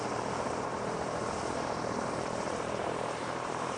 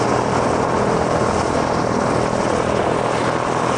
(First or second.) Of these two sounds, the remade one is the first